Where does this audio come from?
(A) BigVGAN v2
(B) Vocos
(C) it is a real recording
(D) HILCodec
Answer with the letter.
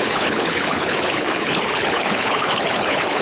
D